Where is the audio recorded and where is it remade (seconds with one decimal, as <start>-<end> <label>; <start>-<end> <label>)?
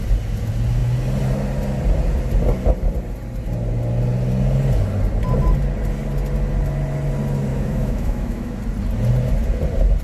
0.0-7.5 recorded; 7.5-8.6 remade; 8.6-10.0 recorded